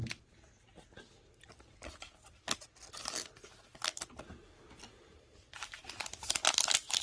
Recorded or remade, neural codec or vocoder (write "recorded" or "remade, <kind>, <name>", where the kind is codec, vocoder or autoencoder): recorded